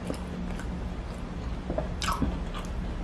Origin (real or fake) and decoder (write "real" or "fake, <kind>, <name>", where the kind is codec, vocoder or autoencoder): real